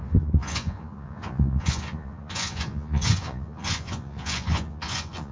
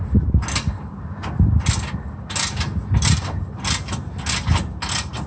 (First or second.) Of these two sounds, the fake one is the first